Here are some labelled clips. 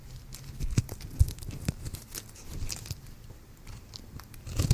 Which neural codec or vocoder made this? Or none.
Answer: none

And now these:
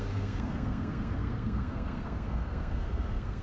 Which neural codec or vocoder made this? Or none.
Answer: codec, SNAC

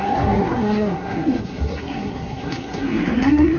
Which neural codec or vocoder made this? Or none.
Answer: codec, SNAC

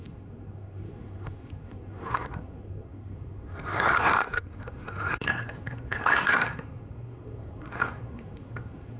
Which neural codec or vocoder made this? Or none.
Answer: codec, SNAC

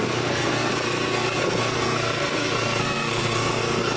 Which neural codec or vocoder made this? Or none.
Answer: codec, SNAC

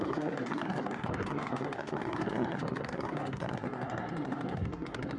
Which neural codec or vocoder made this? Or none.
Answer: codec, SNAC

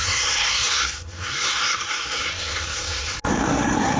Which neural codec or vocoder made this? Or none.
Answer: codec, SNAC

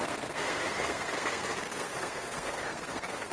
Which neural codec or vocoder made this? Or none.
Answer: codec, SNAC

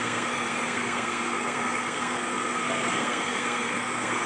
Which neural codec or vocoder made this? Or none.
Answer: codec, SNAC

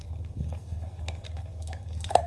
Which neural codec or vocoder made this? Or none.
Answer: codec, SNAC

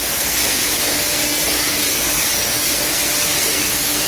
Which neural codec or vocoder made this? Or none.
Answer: codec, SNAC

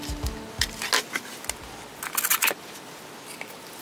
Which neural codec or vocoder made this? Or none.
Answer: none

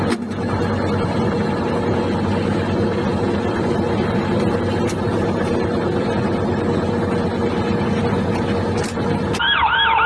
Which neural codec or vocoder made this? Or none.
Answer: none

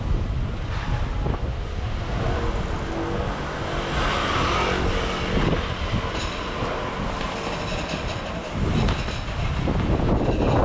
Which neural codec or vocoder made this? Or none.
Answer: none